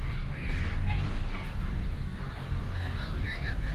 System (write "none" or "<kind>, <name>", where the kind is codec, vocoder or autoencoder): codec, DAC